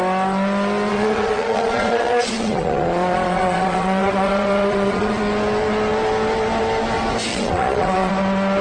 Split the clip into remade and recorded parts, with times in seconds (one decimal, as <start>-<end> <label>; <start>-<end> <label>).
0.0-0.9 recorded; 0.9-5.2 remade; 5.2-7.3 recorded; 7.3-8.1 remade; 8.1-8.6 recorded